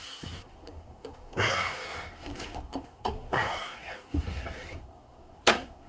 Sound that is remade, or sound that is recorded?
remade